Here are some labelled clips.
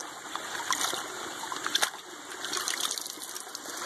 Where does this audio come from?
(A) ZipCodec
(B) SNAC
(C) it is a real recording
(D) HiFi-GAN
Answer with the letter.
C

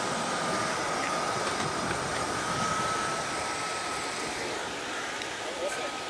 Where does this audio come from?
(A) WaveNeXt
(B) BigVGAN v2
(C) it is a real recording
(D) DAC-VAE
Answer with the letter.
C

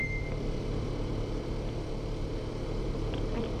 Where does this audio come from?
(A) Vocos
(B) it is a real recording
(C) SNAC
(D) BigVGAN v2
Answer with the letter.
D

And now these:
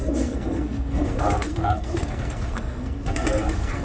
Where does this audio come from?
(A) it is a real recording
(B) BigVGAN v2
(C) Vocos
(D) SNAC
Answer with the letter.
D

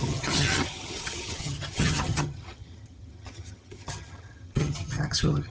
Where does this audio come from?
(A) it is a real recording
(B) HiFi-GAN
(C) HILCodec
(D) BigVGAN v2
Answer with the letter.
B